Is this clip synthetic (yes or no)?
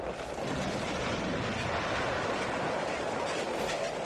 no